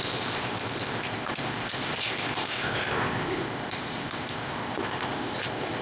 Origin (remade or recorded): remade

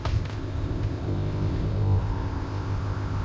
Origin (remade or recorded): remade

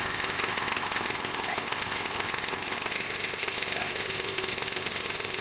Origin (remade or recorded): remade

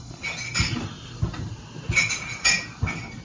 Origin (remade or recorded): recorded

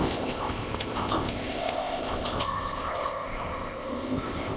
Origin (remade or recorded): remade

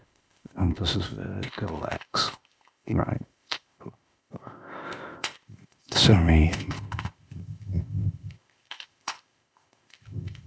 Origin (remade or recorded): remade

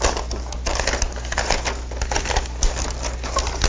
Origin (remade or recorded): recorded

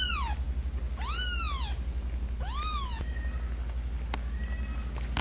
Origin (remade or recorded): recorded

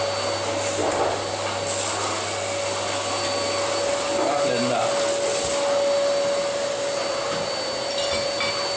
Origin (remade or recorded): recorded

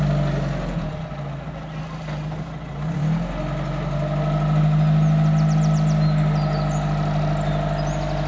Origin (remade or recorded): recorded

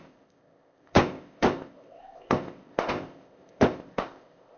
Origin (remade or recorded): remade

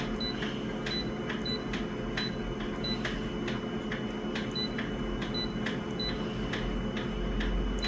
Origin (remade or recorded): recorded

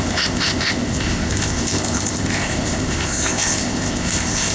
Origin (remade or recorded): remade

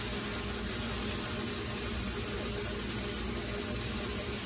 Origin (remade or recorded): recorded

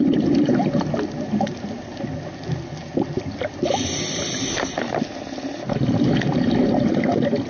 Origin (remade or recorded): recorded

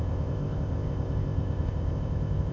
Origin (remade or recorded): remade